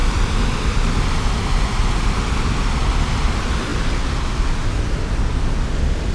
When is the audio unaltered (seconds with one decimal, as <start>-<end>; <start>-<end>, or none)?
0.0-6.1